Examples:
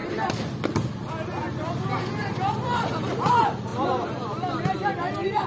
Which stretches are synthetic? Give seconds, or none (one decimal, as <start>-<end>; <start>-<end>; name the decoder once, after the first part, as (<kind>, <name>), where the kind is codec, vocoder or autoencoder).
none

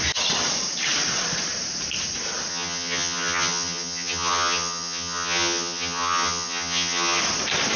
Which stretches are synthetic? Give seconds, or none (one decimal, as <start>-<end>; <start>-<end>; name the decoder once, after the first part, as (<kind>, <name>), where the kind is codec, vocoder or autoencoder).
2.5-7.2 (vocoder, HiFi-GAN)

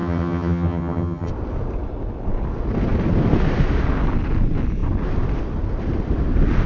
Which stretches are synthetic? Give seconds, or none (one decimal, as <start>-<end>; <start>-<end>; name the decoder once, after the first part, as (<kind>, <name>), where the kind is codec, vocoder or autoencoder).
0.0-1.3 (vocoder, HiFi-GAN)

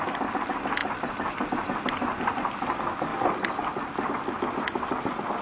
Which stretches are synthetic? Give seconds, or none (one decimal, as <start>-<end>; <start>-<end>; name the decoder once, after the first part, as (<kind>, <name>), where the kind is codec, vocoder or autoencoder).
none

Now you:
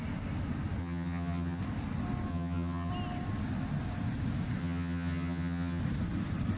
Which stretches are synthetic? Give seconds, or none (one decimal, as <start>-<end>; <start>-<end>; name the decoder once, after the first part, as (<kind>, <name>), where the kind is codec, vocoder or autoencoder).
0.8-1.6 (vocoder, HiFi-GAN); 2.3-2.9; 4.6-5.8